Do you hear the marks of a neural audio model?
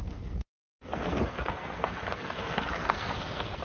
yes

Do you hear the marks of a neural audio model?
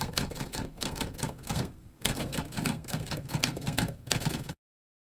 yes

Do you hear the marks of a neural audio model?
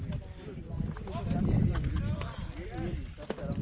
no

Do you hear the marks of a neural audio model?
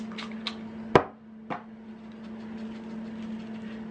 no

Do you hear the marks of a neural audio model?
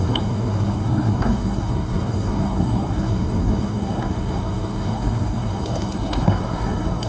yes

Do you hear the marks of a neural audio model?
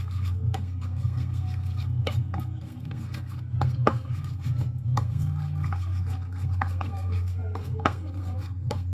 yes